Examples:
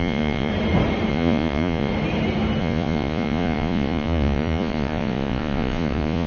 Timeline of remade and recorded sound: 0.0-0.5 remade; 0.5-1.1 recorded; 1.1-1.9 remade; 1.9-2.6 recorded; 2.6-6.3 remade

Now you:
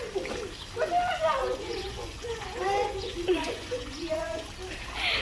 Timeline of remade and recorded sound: 0.0-1.4 recorded; 1.4-4.5 remade; 4.5-5.2 recorded

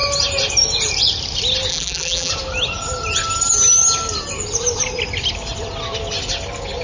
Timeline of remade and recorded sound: 0.0-1.7 recorded; 1.7-2.3 remade; 2.3-6.8 recorded

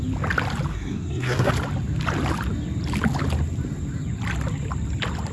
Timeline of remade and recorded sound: 0.0-0.7 recorded; 0.7-1.5 remade; 1.5-5.3 recorded